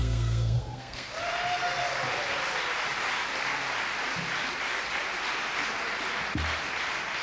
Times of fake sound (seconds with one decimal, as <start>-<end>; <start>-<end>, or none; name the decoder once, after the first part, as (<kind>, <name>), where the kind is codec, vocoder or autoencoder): 0.0-1.1 (codec, SNAC)